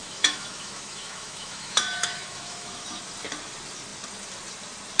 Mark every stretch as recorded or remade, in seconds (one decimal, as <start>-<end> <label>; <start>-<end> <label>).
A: 0.0-3.0 remade; 3.0-5.0 recorded